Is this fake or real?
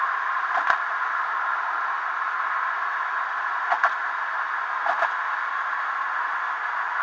real